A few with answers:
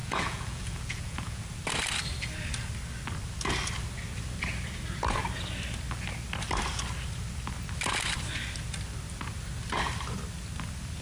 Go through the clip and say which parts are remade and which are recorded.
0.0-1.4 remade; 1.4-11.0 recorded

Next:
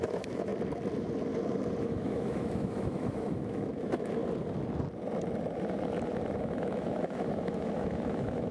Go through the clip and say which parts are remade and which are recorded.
0.0-0.5 remade; 0.5-1.8 recorded; 1.8-4.2 remade; 4.2-6.4 recorded; 6.4-8.5 remade

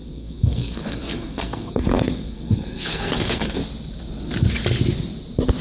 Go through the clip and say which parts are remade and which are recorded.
0.0-3.6 remade; 3.6-5.6 recorded

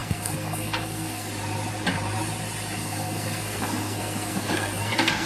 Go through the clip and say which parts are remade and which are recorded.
0.0-1.3 remade; 1.3-2.8 recorded; 2.8-5.3 remade